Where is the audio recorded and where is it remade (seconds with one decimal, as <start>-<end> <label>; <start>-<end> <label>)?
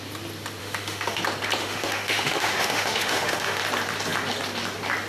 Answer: 0.0-0.6 recorded; 0.6-1.2 remade; 1.2-1.6 recorded; 1.6-3.6 remade; 3.6-5.1 recorded